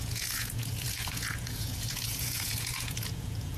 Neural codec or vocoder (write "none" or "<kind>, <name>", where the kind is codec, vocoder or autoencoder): vocoder, Vocos